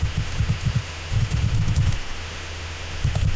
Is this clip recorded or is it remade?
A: remade